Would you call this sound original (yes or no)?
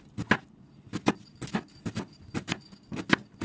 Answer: yes